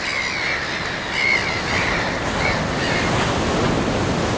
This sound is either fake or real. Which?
real